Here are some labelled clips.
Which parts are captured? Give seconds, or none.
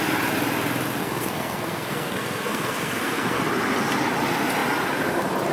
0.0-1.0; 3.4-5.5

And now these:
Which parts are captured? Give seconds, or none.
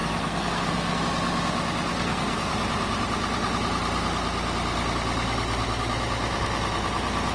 1.0-1.9; 2.5-7.3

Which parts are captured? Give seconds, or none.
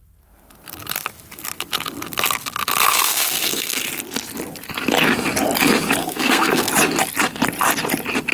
0.0-2.9; 3.8-6.0; 6.7-8.3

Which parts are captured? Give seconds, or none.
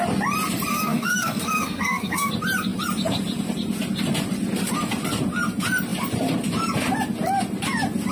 0.0-0.7; 2.3-8.1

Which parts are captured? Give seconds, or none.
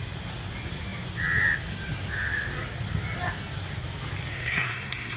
0.0-4.3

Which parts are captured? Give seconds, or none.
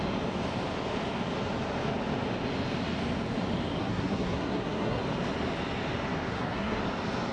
0.0-3.8; 5.0-6.3; 6.8-7.3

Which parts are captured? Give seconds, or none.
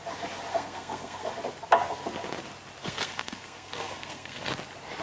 0.0-0.5; 1.3-2.8; 4.5-5.0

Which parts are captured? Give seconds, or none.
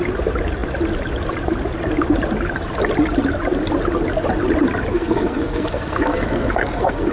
0.0-4.9